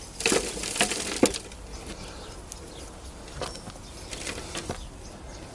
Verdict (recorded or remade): recorded